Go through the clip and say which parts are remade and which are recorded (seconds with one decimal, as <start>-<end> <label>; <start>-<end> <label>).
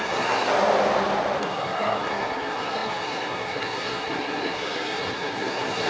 0.0-0.5 remade; 0.5-1.4 recorded; 1.4-5.9 remade